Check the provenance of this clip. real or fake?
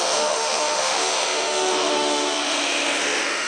fake